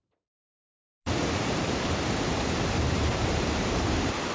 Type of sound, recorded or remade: remade